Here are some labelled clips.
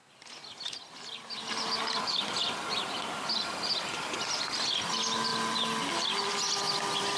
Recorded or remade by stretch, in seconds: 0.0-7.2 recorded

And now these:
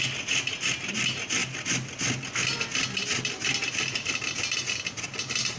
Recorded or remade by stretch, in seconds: 0.0-5.6 recorded

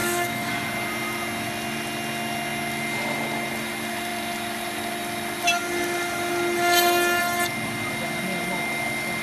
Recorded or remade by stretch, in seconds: 0.0-0.5 remade; 0.5-9.2 recorded

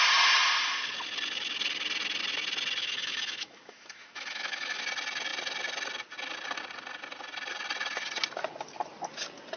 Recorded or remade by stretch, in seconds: 0.0-2.8 recorded; 2.8-4.8 remade; 4.8-9.6 recorded

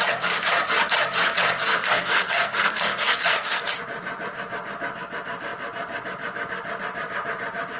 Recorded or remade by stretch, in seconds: 0.0-1.6 recorded; 1.6-3.6 remade; 3.6-7.8 recorded

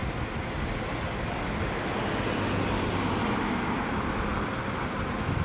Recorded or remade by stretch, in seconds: 0.0-5.4 recorded

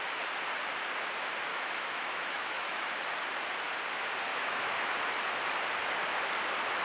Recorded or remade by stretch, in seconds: 0.0-1.5 recorded; 1.5-3.0 remade; 3.0-4.3 recorded; 4.3-5.0 remade; 5.0-6.8 recorded

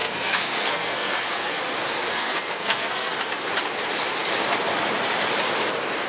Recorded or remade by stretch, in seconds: 0.0-1.6 remade; 1.6-2.1 recorded; 2.1-3.1 remade; 3.1-6.1 recorded